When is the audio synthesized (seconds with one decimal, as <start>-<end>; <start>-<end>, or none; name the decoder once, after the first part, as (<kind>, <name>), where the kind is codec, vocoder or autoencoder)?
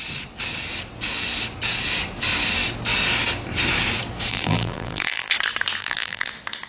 4.3-5.3 (vocoder, BigVGAN v2); 5.8-6.3